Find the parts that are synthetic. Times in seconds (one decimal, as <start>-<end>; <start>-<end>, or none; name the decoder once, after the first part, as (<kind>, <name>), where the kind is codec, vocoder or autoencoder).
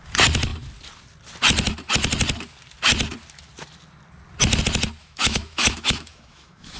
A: 5.0-6.8 (autoencoder, DAC-VAE)